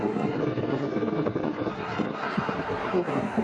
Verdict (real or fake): fake